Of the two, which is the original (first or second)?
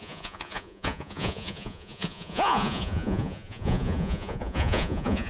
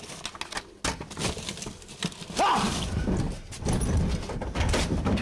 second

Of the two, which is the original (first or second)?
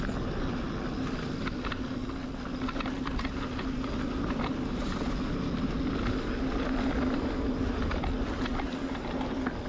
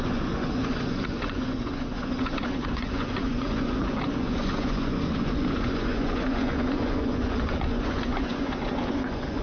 first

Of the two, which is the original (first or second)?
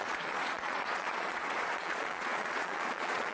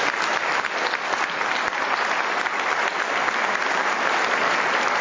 second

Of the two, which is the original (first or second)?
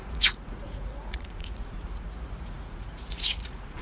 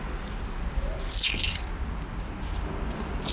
second